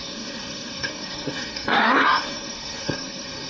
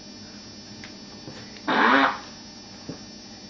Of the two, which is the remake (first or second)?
first